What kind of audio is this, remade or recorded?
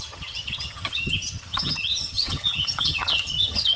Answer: remade